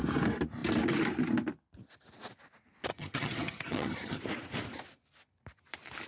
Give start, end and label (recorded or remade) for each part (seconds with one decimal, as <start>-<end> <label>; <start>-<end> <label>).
0.0-2.9 recorded; 2.9-4.2 remade; 4.2-6.1 recorded